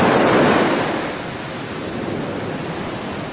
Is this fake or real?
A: real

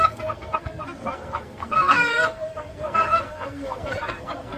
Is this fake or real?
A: fake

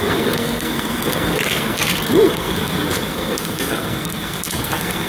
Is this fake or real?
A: fake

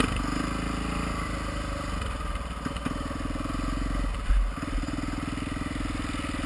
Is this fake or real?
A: real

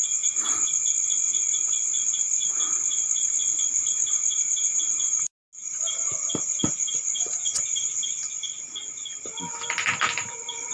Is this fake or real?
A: real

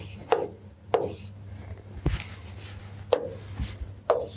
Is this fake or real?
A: real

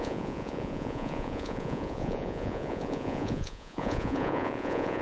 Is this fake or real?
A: fake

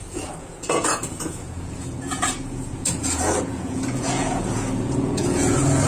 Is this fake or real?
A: fake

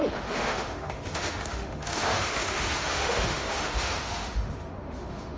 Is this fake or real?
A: fake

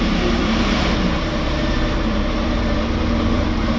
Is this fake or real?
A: fake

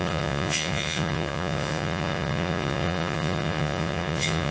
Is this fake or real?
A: fake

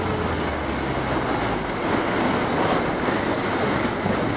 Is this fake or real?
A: real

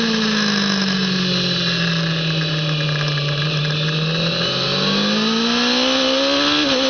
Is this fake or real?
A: real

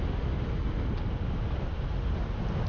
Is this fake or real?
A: real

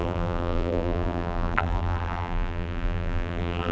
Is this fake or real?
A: fake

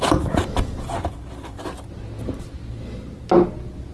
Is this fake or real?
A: real